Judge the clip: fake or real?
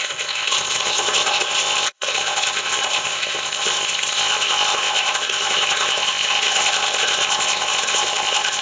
fake